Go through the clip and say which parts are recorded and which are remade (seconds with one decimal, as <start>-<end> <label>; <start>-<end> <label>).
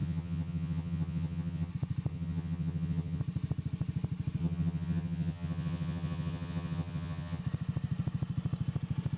0.0-1.7 remade; 1.7-2.1 recorded; 2.1-3.2 remade; 3.2-4.4 recorded; 4.4-7.4 remade; 7.4-9.2 recorded